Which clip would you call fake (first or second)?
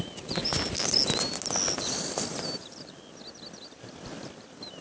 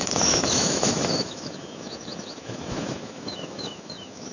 second